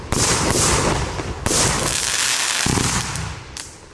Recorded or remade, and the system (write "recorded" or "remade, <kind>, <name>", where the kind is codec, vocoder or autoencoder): recorded